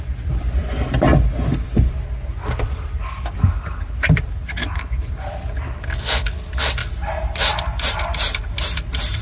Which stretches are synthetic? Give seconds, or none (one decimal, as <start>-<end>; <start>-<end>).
4.6-5.1